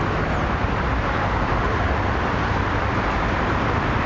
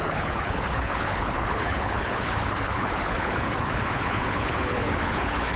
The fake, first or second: second